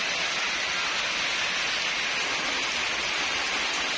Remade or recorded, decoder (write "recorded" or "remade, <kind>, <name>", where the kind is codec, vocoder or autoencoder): recorded